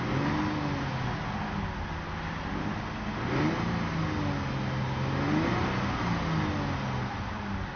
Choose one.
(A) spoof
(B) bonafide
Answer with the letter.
B